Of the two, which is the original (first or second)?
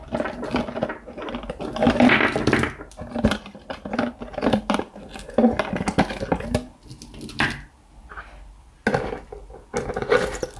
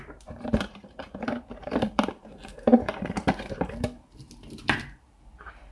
first